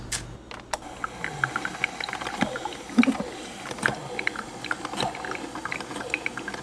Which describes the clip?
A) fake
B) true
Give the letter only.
B